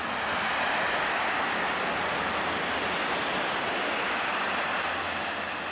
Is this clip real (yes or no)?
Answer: yes